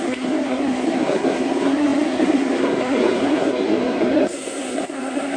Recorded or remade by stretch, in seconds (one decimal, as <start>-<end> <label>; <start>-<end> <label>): 0.0-5.4 remade